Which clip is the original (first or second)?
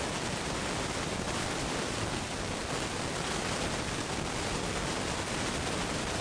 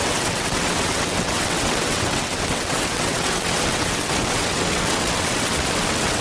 first